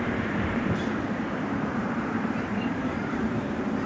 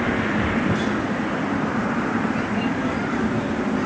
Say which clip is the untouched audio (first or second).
second